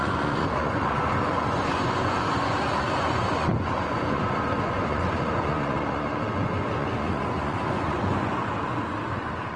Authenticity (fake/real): fake